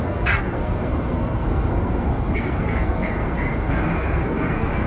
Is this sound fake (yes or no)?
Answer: yes